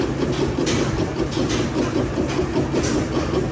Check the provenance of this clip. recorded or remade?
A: recorded